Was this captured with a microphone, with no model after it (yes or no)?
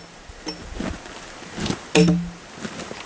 yes